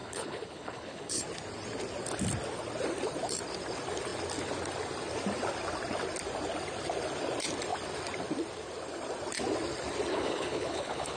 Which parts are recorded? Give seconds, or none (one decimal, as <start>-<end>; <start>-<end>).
1.2-10.1